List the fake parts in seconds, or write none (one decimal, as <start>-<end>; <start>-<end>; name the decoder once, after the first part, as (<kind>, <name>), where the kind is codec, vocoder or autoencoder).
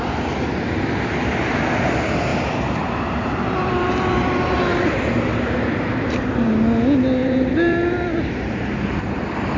2.3-6.5 (vocoder, BigVGAN v2); 7.2-9.0